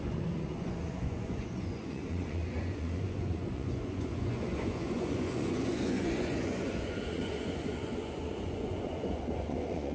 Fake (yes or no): yes